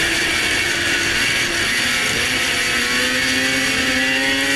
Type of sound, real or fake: real